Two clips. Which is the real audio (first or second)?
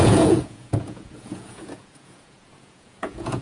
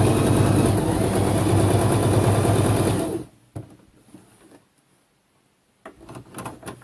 second